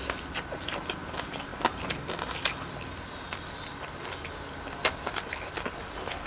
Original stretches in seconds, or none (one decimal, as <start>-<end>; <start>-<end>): 0.0-6.3